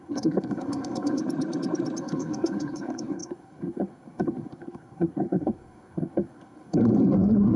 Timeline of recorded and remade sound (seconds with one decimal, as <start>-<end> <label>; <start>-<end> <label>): 0.0-1.2 remade; 1.2-2.0 recorded; 2.0-7.6 remade